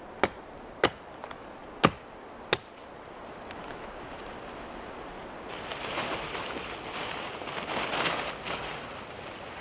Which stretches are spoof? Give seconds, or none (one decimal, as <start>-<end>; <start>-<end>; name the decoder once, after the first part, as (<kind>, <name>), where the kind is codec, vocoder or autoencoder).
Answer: none